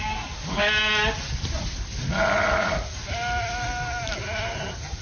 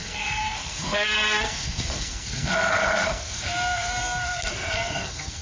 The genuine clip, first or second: first